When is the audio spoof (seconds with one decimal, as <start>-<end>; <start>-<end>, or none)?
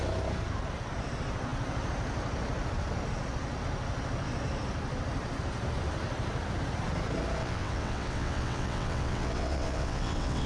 7.4-10.5